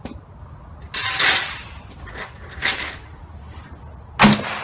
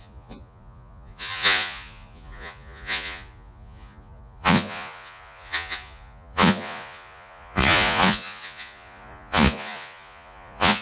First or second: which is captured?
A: first